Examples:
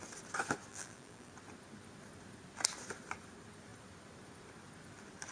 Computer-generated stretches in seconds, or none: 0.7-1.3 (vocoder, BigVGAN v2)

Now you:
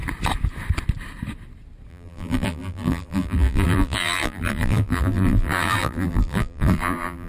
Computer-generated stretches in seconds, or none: 1.9-7.3 (vocoder, BigVGAN v2)

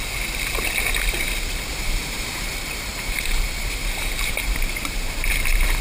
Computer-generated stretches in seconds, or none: 1.7-2.5 (vocoder, BigVGAN v2); 2.9-5.3

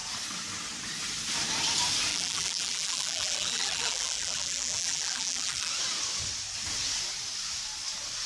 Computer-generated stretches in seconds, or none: 2.1-5.7 (vocoder, BigVGAN v2)

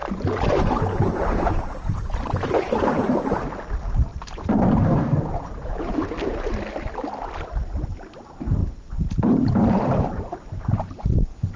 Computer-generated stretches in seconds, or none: 0.0-3.3 (vocoder, BigVGAN v2); 4.1-5.9; 8.6-11.6

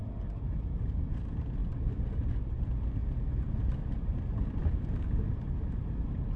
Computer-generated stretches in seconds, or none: none

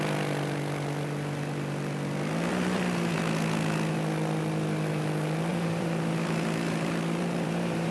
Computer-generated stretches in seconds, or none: 2.5-3.2 (vocoder, BigVGAN v2); 5.5-7.9

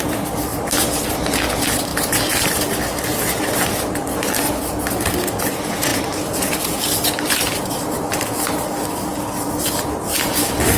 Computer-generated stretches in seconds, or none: 0.5-1.1 (vocoder, BigVGAN v2); 1.9-3.0; 5.9-7.8